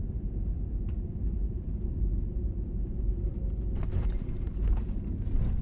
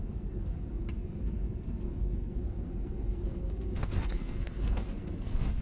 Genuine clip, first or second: first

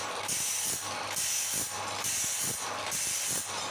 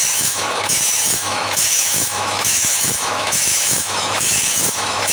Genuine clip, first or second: first